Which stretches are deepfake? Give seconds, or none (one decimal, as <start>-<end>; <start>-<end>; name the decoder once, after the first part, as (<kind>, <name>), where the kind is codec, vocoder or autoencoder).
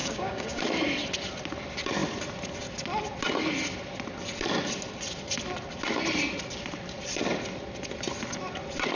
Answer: 0.0-0.6 (codec, DAC)